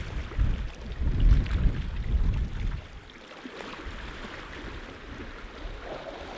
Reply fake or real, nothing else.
real